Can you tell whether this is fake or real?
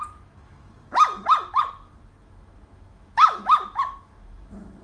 fake